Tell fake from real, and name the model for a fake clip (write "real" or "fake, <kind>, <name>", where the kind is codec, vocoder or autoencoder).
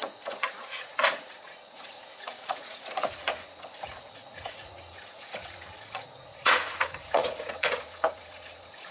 fake, vocoder, Vocos